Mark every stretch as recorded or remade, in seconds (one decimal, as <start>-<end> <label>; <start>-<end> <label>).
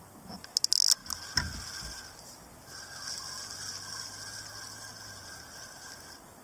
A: 0.0-6.4 recorded